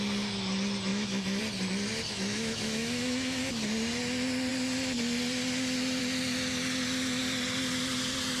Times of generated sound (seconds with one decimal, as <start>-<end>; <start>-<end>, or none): 0.9-1.4; 2.1-3.5